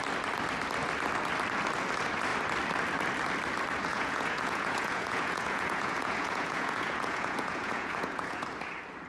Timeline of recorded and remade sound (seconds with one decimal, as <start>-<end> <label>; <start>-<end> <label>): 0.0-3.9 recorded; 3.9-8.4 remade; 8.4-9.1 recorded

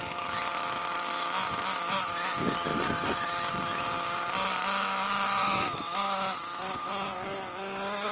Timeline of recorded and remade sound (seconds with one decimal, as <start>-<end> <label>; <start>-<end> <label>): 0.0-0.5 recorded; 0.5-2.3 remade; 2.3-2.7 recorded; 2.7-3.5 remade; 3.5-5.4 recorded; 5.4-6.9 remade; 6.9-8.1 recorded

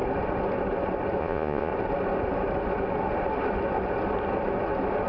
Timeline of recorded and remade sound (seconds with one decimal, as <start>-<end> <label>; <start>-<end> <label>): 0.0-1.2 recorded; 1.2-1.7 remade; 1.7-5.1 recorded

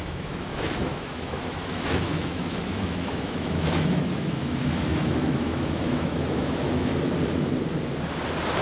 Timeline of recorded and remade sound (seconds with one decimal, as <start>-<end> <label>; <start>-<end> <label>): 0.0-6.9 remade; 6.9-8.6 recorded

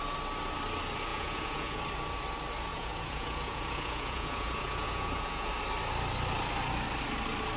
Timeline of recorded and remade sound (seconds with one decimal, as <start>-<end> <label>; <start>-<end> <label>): 0.0-1.1 recorded; 1.1-1.8 remade; 1.8-2.7 recorded; 2.7-5.5 remade; 5.5-7.6 recorded

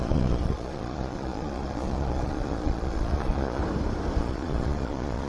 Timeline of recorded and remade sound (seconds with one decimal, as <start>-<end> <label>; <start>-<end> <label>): 0.0-3.6 remade; 3.6-4.2 recorded; 4.2-5.3 remade